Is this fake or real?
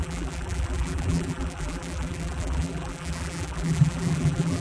fake